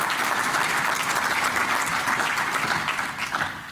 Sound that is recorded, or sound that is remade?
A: recorded